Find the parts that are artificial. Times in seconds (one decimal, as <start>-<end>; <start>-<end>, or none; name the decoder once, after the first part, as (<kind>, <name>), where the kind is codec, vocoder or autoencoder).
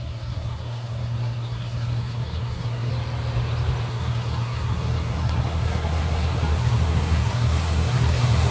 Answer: 0.0-2.9 (codec, SNAC); 3.9-8.5